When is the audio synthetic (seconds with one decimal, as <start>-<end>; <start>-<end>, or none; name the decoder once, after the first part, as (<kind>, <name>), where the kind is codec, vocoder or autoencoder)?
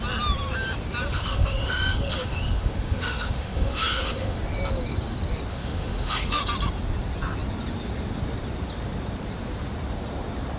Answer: 1.1-4.4 (autoencoder, DAC-VAE); 5.5-6.4